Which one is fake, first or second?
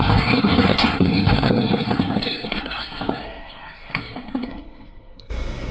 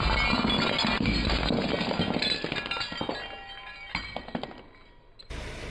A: first